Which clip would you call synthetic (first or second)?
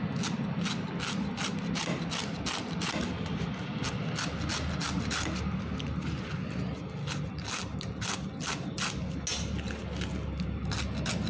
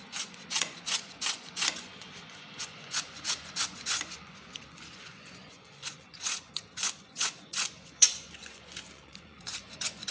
second